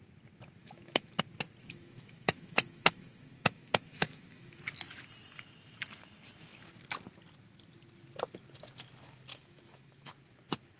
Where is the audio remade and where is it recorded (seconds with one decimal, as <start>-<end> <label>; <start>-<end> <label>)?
0.0-0.6 recorded; 0.6-1.2 remade; 1.2-1.6 recorded; 1.6-4.6 remade; 4.6-9.3 recorded; 9.3-10.1 remade; 10.1-10.8 recorded